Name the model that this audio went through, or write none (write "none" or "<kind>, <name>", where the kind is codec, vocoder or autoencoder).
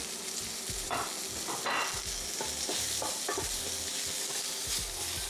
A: none